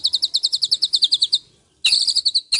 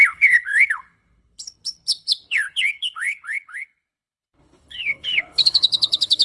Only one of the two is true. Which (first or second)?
first